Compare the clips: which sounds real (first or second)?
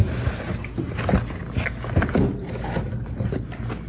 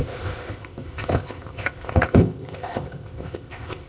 first